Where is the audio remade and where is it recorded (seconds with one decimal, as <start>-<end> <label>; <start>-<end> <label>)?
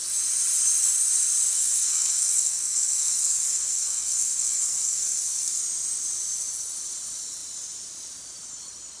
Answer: 0.0-1.5 recorded; 1.5-5.6 remade; 5.6-9.0 recorded